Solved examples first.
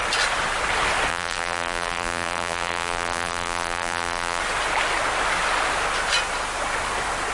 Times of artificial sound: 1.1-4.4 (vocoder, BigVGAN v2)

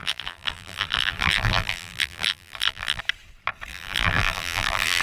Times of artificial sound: 0.0-3.0 (vocoder, BigVGAN v2); 3.7-5.0

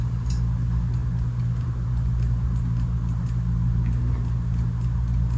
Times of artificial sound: none

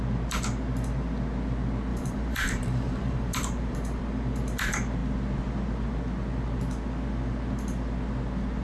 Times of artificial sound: 1.9-4.0 (vocoder, BigVGAN v2)

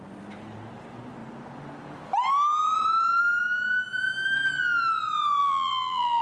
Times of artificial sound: 5.4-6.2 (vocoder, BigVGAN v2)